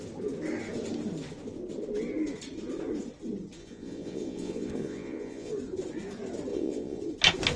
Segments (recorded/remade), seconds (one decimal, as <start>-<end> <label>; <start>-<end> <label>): 0.0-3.6 recorded; 3.6-5.5 remade; 5.5-6.5 recorded; 6.5-7.0 remade; 7.0-7.6 recorded